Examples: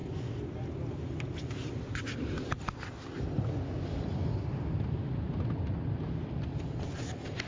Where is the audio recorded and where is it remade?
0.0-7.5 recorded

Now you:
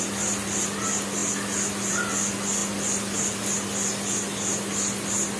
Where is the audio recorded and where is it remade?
0.0-5.4 recorded

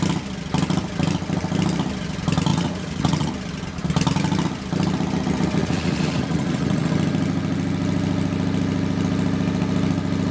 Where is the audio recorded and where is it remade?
0.0-2.5 recorded; 2.5-3.3 remade; 3.3-5.6 recorded; 5.6-6.9 remade; 6.9-10.3 recorded

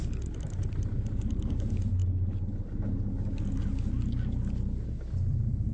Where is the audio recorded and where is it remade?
0.0-5.7 recorded

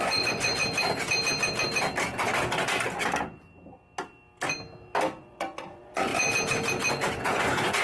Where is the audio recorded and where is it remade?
0.0-0.6 remade; 0.6-5.2 recorded; 5.2-6.1 remade; 6.1-6.9 recorded; 6.9-7.8 remade

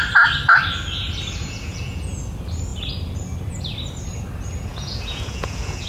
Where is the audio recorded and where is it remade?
0.0-1.4 recorded; 1.4-2.1 remade; 2.1-4.7 recorded; 4.7-5.9 remade